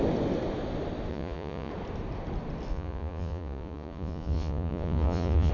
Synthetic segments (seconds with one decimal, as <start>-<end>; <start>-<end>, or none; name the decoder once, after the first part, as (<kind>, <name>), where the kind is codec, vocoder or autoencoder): 1.1-1.7 (vocoder, Vocos); 2.7-5.5